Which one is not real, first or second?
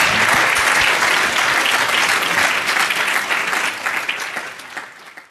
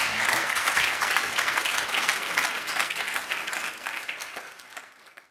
second